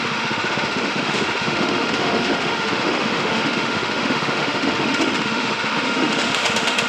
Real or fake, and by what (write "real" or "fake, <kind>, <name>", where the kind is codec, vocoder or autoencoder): fake, autoencoder, DAC-VAE